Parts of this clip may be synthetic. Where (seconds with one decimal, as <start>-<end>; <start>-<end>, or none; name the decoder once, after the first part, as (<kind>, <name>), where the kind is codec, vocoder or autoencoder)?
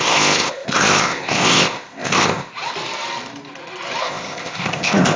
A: 0.0-2.5 (codec, ZipCodec); 4.0-5.2